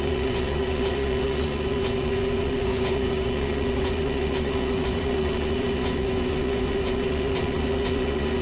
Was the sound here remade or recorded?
remade